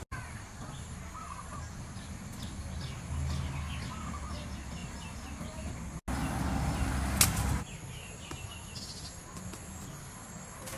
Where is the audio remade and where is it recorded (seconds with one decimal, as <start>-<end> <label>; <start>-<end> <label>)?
0.0-10.8 recorded